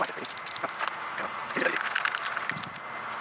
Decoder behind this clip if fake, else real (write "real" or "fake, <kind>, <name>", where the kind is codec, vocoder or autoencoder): real